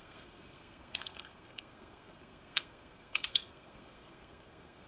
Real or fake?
fake